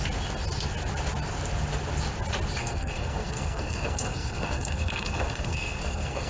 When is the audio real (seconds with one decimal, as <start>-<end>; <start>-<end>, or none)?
0.0-2.6